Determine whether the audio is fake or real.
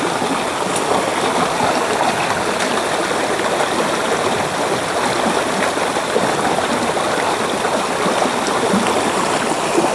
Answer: real